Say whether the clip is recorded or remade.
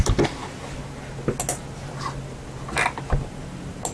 recorded